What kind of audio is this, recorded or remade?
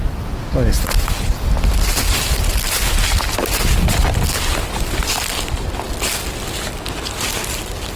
recorded